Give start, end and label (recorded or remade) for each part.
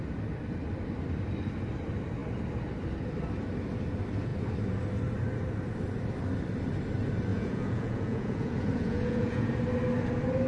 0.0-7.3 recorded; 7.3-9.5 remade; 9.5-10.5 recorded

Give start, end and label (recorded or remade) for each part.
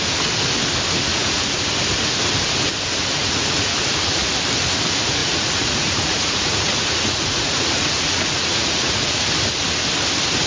0.0-1.1 recorded; 1.1-1.7 remade; 1.7-3.2 recorded; 3.2-4.3 remade; 4.3-5.2 recorded; 5.2-9.3 remade; 9.3-10.5 recorded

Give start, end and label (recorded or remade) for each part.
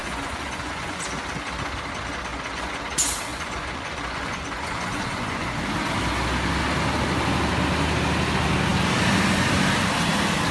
0.0-1.0 remade; 1.0-2.3 recorded; 2.3-2.8 remade; 2.8-3.3 recorded; 3.3-5.6 remade; 5.6-10.5 recorded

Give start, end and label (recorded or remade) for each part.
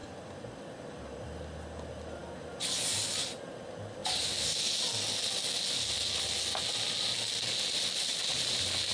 0.0-8.9 recorded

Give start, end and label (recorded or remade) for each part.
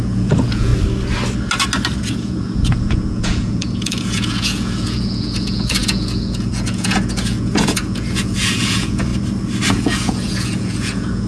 0.0-0.7 remade; 0.7-2.0 recorded; 2.0-9.1 remade; 9.1-9.7 recorded; 9.7-11.3 remade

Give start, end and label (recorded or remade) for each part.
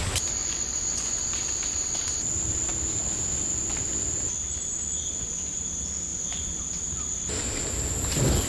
0.0-0.4 recorded; 0.4-1.2 remade; 1.2-6.1 recorded; 6.1-6.6 remade; 6.6-8.5 recorded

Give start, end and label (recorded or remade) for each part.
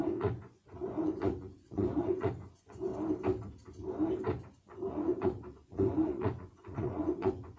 0.0-2.9 remade; 2.9-4.6 recorded; 4.6-7.6 remade